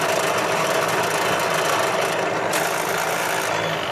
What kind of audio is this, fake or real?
real